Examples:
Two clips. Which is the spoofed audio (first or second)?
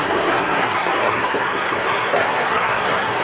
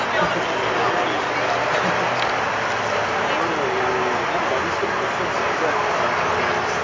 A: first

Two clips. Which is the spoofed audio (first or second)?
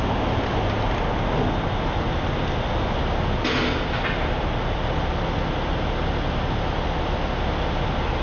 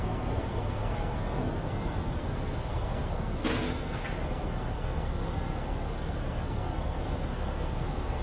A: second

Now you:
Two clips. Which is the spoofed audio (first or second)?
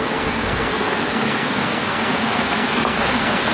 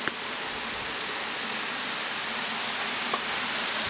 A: first